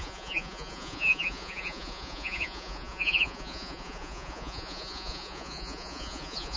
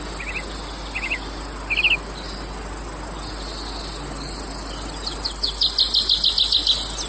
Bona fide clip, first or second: second